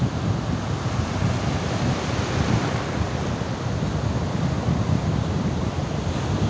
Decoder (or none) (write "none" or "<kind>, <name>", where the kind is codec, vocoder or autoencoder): none